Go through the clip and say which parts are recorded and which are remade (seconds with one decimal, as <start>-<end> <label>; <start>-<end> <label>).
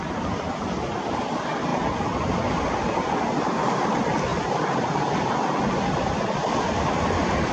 0.0-7.5 recorded